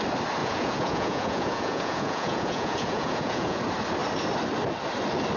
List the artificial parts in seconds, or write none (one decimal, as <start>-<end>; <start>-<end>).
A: 0.4-3.6